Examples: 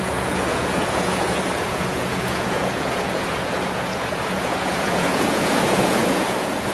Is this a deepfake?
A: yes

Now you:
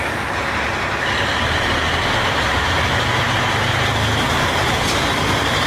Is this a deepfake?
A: no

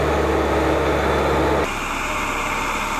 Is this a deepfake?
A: no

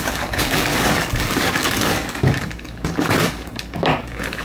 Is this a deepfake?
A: yes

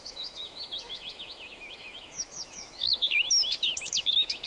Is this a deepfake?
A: yes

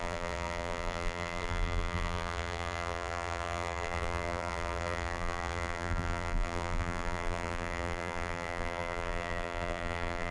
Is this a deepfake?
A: yes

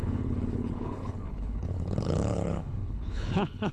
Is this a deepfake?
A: yes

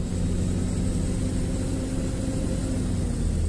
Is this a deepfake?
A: no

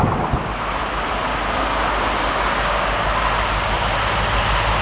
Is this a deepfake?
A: no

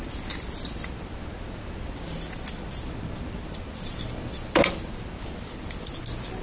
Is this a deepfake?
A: no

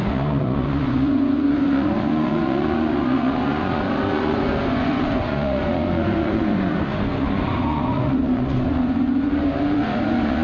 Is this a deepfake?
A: yes